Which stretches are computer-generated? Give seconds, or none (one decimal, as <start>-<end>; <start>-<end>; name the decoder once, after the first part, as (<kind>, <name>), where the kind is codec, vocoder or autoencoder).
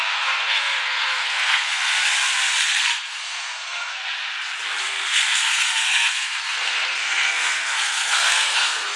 0.0-1.9 (codec, SNAC); 2.6-4.0; 4.8-9.0